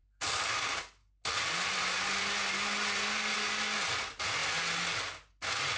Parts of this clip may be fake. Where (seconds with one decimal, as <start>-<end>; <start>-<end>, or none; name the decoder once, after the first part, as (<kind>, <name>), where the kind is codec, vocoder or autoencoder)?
none